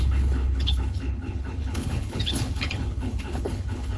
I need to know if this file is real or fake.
fake